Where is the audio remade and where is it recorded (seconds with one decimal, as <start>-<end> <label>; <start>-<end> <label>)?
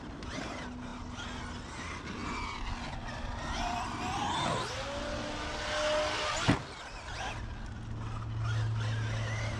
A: 0.0-9.6 recorded